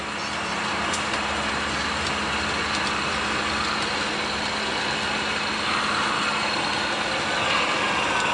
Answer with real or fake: real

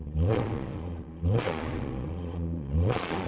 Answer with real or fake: fake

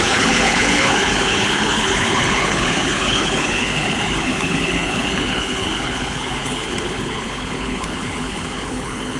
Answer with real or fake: fake